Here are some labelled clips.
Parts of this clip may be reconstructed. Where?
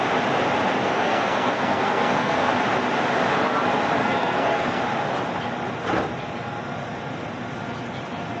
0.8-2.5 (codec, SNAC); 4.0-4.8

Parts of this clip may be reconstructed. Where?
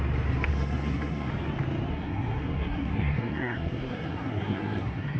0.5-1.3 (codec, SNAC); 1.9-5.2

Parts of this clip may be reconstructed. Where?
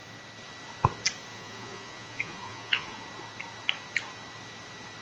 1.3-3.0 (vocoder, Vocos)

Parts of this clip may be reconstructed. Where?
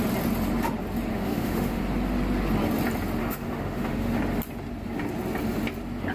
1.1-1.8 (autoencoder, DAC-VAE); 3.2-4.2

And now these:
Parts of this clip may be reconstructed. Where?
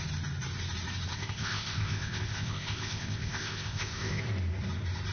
1.1-4.2 (codec, ZipCodec)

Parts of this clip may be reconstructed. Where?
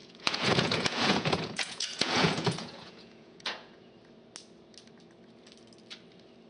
0.0-3.9 (vocoder, Vocos)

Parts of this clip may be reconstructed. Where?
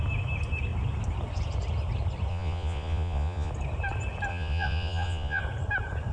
2.3-3.5 (vocoder, Vocos); 4.3-5.4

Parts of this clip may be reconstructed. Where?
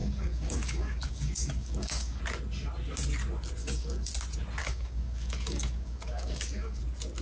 0.0-2.2 (codec, DAC); 3.6-4.1; 4.6-6.8